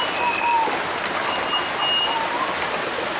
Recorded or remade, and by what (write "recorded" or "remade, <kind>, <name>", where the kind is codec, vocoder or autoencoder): recorded